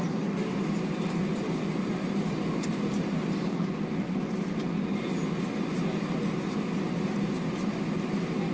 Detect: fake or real real